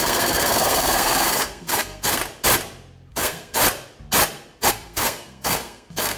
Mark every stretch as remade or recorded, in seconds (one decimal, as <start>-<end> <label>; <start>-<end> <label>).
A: 0.0-2.2 remade; 2.2-3.1 recorded; 3.1-3.6 remade; 3.6-4.7 recorded; 4.7-6.2 remade